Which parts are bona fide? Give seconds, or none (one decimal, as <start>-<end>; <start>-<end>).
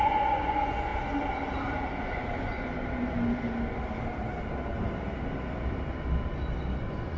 0.9-2.0; 2.5-6.8